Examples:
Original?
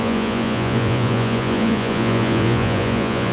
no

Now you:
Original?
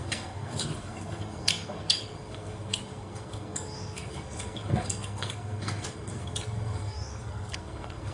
no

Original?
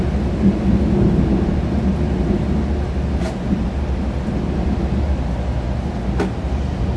yes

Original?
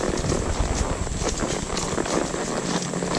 yes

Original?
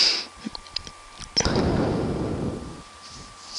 yes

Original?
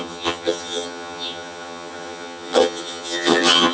no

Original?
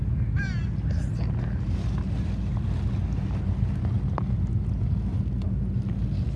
yes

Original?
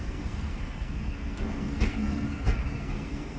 no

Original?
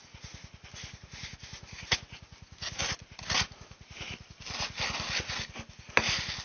yes